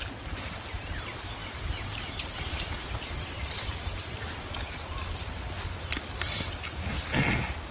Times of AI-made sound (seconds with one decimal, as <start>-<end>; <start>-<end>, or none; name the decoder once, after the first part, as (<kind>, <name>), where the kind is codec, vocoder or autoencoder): 1.4-5.4 (vocoder, BigVGAN v2)